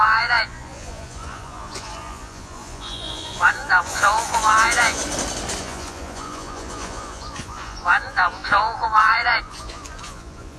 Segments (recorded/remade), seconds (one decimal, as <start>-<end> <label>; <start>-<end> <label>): 0.0-5.0 remade; 5.0-5.6 recorded; 5.6-10.6 remade